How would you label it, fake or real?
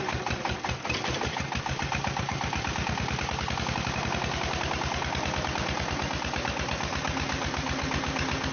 real